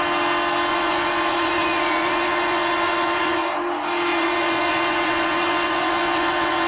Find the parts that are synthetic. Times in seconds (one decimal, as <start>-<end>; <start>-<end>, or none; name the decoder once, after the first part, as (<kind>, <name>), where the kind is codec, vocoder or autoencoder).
0.7-3.5 (vocoder, Vocos); 4.1-6.7